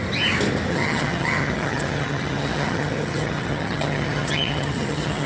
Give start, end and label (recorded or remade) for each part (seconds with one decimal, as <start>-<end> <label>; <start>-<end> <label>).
0.0-0.7 recorded; 0.7-5.3 remade